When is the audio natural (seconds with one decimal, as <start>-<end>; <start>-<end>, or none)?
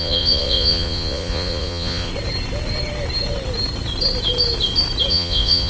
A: 2.1-5.1